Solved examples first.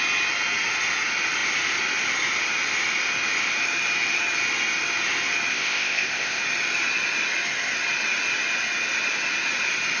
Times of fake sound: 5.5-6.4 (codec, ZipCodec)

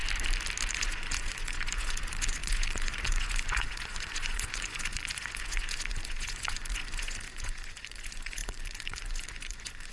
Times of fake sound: 0.7-9.9 (vocoder, Vocos)